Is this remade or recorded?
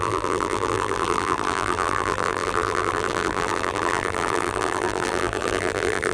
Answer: remade